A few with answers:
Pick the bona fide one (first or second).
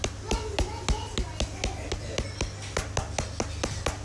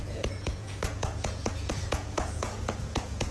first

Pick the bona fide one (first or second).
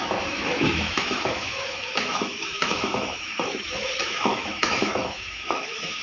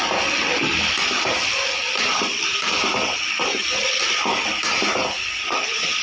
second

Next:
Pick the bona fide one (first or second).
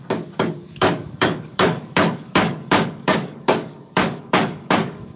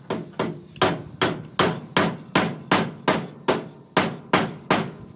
second